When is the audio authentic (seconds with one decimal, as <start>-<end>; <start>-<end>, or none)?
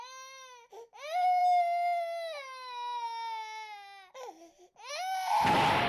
0.0-5.9